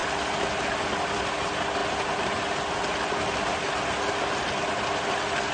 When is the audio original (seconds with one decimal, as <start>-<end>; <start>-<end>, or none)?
0.0-5.5